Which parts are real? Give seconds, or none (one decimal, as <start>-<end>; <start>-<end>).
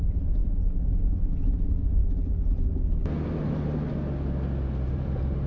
0.4-1.6; 2.0-4.9